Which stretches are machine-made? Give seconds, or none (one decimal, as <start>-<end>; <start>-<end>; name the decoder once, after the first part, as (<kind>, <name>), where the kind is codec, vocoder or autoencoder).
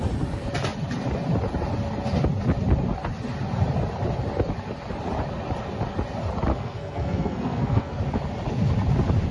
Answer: 6.5-8.0 (codec, SNAC)